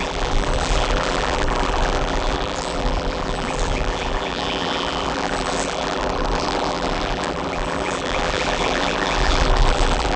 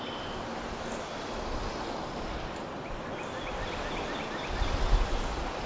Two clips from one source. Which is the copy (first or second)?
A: first